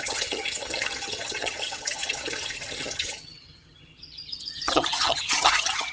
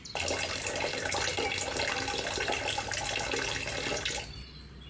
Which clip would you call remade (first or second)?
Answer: first